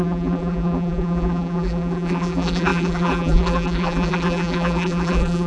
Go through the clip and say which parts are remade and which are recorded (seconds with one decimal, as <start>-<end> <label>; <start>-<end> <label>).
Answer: 0.0-5.5 remade